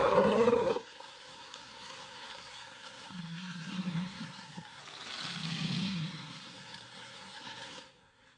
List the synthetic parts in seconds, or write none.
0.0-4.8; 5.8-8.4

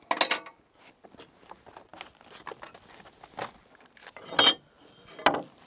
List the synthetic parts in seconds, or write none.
none

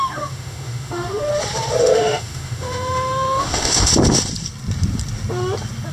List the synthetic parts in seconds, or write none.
0.0-1.3; 1.8-3.9

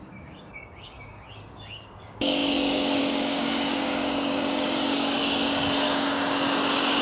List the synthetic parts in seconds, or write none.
0.0-7.0

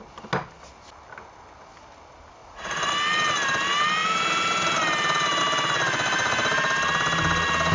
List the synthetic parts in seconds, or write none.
2.4-2.9

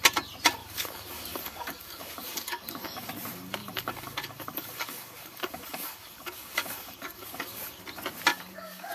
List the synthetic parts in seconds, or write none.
0.6-3.1; 3.6-7.8; 8.3-8.9

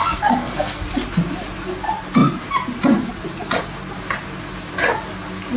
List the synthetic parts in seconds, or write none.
0.0-0.8